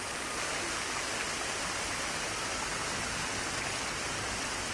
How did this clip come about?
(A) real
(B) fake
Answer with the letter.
A